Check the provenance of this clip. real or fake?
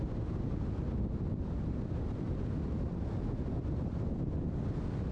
real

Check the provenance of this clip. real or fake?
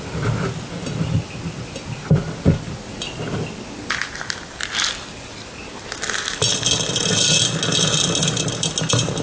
real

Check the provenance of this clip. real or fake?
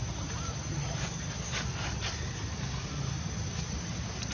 real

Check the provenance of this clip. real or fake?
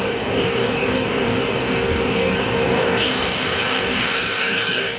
fake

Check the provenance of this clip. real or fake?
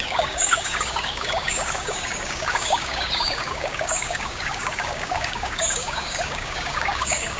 fake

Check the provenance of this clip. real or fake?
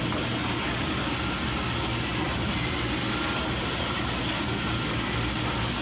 real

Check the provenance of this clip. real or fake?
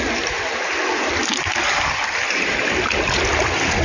real